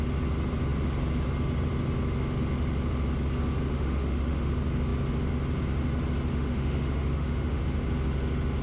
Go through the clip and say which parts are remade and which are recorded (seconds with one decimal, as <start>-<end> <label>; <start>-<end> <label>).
0.0-3.7 recorded; 3.7-4.5 remade; 4.5-6.3 recorded; 6.3-7.6 remade; 7.6-8.6 recorded